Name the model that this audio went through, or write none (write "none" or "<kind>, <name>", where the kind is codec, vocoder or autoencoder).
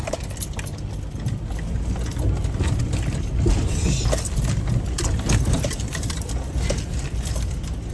none